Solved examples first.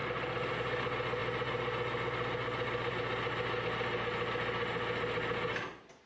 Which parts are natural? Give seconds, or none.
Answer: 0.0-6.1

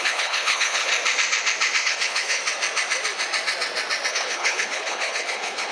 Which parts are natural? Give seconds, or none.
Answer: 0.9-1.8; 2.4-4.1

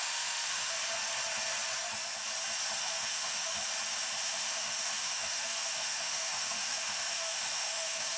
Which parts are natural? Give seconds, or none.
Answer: 0.8-2.8; 3.6-4.2